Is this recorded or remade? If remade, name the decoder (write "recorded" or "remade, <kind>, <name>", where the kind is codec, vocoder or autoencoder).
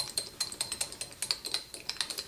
recorded